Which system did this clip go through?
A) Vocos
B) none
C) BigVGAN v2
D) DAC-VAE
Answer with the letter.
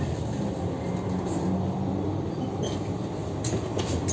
B